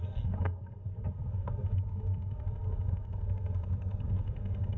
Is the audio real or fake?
fake